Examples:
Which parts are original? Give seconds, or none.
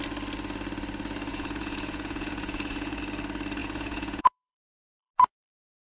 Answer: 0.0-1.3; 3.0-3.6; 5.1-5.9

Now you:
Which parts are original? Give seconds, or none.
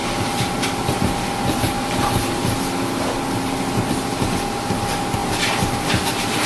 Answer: 3.2-5.2; 5.9-6.5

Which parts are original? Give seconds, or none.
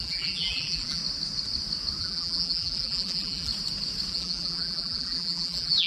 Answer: 1.0-2.0; 3.5-4.1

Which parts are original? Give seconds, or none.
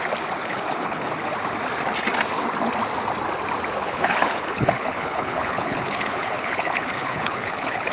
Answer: 0.0-0.4; 1.1-3.8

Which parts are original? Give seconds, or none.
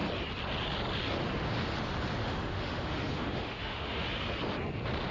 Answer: 0.0-2.2; 4.1-5.1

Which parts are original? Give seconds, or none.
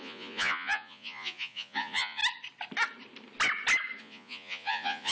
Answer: 2.2-4.0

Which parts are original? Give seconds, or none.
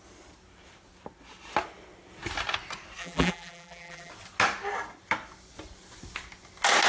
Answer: 0.0-3.0; 4.1-6.9